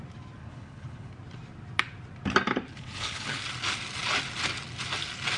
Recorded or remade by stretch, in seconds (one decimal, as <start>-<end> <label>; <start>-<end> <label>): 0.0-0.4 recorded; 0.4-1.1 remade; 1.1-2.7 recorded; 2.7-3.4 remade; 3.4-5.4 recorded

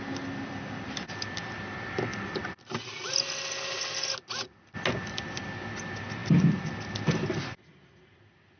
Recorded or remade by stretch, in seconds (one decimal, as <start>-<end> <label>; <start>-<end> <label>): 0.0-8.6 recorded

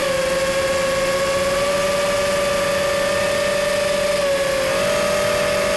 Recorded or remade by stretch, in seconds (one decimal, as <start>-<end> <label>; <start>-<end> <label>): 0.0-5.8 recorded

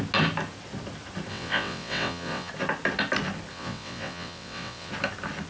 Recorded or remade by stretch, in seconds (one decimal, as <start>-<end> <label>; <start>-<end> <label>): 0.0-1.3 recorded; 1.3-2.5 remade; 2.5-3.5 recorded; 3.5-4.9 remade; 4.9-5.5 recorded

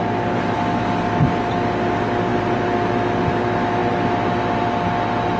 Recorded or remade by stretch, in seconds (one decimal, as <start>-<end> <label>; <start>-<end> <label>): 0.0-5.4 recorded

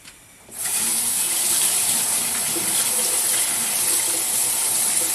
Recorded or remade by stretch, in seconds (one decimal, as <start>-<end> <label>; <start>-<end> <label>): 0.0-0.6 recorded; 0.6-1.3 remade; 1.3-5.1 recorded